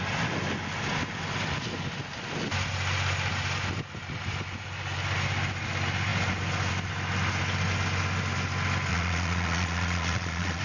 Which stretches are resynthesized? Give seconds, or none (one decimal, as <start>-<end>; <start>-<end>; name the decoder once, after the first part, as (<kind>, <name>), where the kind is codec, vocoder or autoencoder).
8.9-10.6 (vocoder, Vocos)